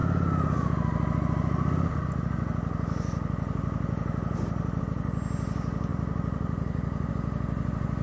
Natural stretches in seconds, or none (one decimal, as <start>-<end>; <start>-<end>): 0.0-5.9; 7.1-8.0